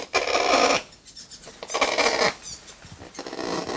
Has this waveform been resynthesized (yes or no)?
no